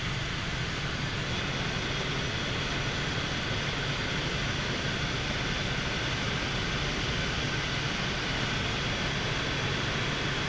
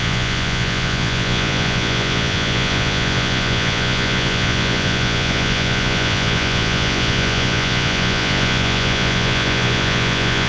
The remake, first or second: second